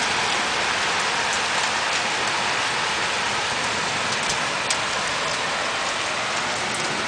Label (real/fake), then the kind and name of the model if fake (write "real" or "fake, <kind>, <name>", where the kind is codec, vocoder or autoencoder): real